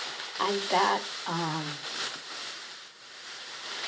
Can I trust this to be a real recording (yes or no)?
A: no